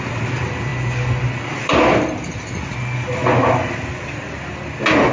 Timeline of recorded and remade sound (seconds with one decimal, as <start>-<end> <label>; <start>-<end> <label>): 0.0-5.1 recorded